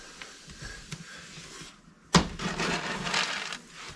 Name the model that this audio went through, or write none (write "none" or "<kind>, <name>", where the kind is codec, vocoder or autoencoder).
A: none